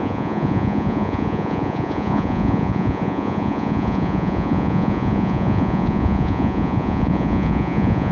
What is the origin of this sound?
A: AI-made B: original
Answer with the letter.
A